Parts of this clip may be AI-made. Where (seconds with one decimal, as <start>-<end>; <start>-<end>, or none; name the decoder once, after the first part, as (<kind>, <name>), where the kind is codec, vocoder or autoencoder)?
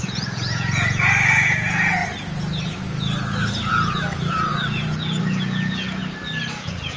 0.0-2.0 (vocoder, Vocos); 3.7-6.0; 6.6-7.0